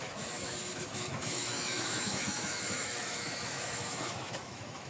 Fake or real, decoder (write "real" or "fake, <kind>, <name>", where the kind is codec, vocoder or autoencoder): fake, autoencoder, DAC-VAE